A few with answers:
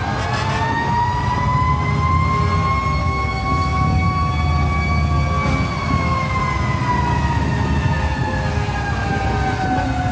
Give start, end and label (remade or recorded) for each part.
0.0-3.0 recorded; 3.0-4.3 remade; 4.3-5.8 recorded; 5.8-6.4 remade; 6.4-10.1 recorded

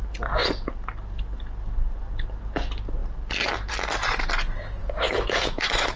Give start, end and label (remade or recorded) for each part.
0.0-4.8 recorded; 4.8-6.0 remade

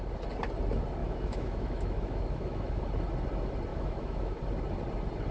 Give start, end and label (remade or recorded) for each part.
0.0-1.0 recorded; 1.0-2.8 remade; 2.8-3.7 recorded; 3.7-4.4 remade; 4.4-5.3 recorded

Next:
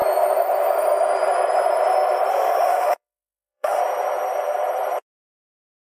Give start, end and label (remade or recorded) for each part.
0.0-2.3 recorded; 2.3-3.8 remade; 3.8-6.0 recorded